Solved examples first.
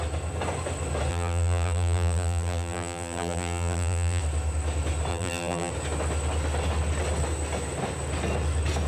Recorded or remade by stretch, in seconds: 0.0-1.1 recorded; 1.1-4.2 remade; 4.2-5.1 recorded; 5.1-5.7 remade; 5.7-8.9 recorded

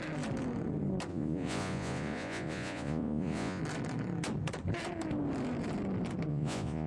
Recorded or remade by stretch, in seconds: 0.0-1.1 recorded; 1.1-3.6 remade; 3.6-6.3 recorded; 6.3-6.9 remade

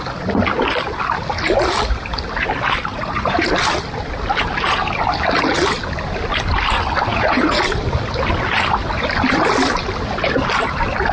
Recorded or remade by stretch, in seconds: 0.0-2.9 recorded; 2.9-3.5 remade; 3.5-7.1 recorded; 7.1-7.6 remade; 7.6-11.1 recorded

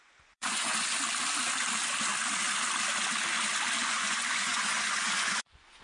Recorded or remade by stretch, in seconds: 0.0-0.7 remade; 0.7-3.8 recorded; 3.8-5.8 remade

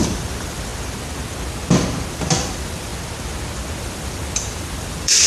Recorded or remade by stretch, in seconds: 0.0-0.7 remade; 0.7-2.1 recorded; 2.1-2.9 remade; 2.9-3.8 recorded; 3.8-5.3 remade

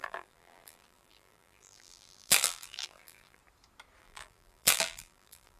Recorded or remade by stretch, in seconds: 0.0-3.4 remade; 3.4-4.0 recorded; 4.0-5.6 remade

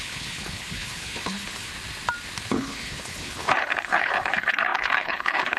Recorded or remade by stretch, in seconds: 0.0-1.7 remade; 1.7-2.5 recorded; 2.5-5.6 remade

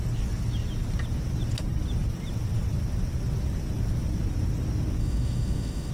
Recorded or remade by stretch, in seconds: 0.0-5.0 recorded; 5.0-5.9 remade